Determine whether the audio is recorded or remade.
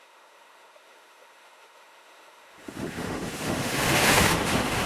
remade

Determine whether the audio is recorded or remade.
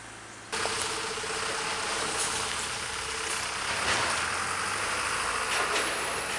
recorded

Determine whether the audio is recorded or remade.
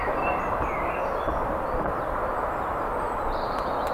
recorded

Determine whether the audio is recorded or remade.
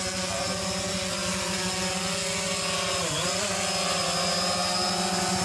recorded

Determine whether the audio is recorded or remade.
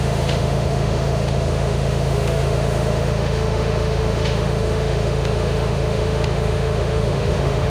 remade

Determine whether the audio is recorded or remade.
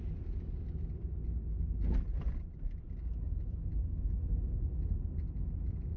recorded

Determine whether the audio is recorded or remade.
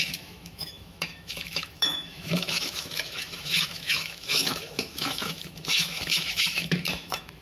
remade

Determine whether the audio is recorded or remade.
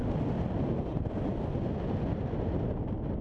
recorded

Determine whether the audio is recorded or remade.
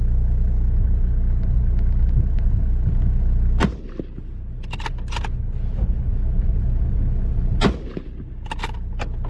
recorded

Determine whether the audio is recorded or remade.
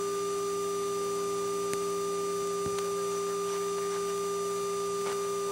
recorded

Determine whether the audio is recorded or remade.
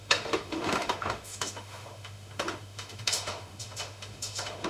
remade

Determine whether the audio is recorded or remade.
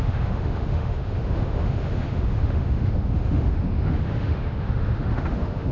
remade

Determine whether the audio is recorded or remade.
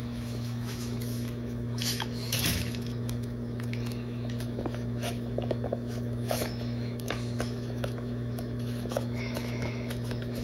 remade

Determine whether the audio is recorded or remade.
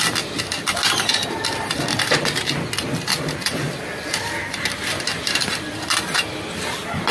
recorded